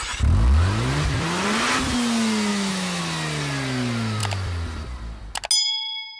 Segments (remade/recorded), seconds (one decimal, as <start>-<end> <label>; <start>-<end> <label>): 0.0-2.5 recorded; 2.5-3.0 remade; 3.0-6.2 recorded